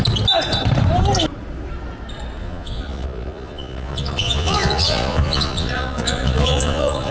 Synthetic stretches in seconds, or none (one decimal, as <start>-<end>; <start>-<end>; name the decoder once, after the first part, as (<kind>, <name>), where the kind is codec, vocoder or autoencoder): 2.4-7.1 (vocoder, Vocos)